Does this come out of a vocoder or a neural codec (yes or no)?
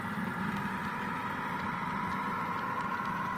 yes